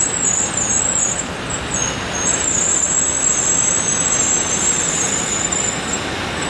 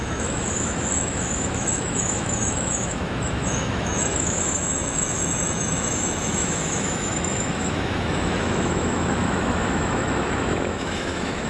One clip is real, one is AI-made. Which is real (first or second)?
first